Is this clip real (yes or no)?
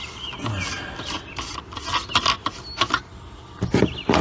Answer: yes